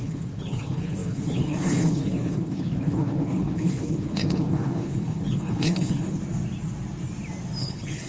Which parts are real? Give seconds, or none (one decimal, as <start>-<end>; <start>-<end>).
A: 6.2-7.6